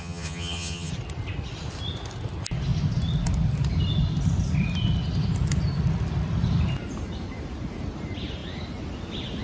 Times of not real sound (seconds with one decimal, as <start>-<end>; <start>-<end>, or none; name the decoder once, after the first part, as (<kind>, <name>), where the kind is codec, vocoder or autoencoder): 0.0-0.9 (vocoder, HiFi-GAN)